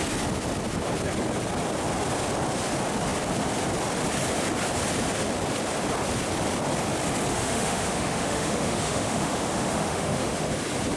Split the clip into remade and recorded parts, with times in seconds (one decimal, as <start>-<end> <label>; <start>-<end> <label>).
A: 0.0-7.3 recorded; 7.3-10.5 remade; 10.5-11.0 recorded

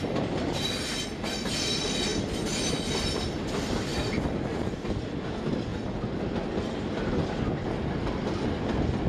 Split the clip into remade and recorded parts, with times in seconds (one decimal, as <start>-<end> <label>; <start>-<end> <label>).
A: 0.0-9.1 recorded

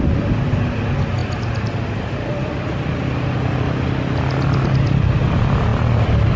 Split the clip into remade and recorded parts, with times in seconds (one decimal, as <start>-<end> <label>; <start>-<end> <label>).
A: 0.0-6.4 recorded

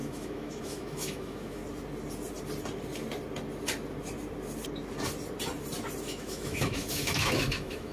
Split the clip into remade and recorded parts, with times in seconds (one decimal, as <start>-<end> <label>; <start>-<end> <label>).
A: 0.0-1.6 remade; 1.6-6.0 recorded; 6.0-7.9 remade

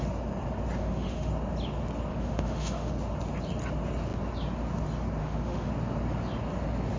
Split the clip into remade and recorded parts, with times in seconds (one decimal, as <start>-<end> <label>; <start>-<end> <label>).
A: 0.0-0.8 recorded; 0.8-1.3 remade; 1.3-2.1 recorded; 2.1-2.9 remade; 2.9-5.2 recorded; 5.2-5.7 remade; 5.7-7.0 recorded

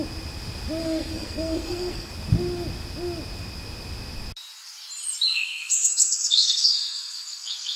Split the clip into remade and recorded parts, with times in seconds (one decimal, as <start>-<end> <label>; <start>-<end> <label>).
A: 0.0-0.8 recorded; 0.8-2.1 remade; 2.1-5.3 recorded; 5.3-7.8 remade

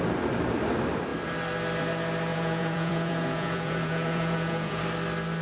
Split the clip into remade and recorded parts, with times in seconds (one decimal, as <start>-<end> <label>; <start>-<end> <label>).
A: 0.0-2.3 recorded; 2.3-4.8 remade; 4.8-5.4 recorded